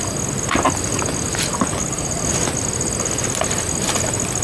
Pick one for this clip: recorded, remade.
recorded